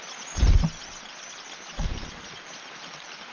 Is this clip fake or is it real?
real